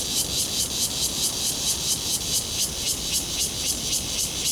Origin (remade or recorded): remade